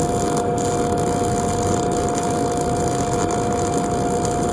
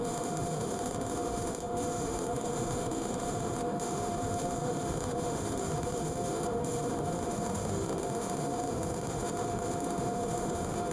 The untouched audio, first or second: first